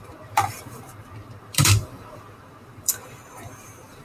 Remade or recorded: remade